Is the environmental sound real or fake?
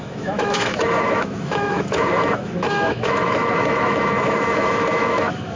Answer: fake